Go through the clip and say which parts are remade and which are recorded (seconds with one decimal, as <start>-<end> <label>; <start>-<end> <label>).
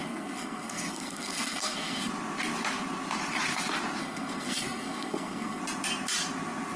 0.0-2.1 remade; 2.1-4.0 recorded; 4.0-5.6 remade; 5.6-6.8 recorded